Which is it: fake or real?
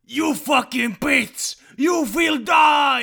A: real